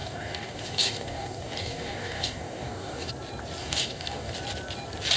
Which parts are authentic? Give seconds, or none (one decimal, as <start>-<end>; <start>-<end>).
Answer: 3.1-3.6; 4.3-5.2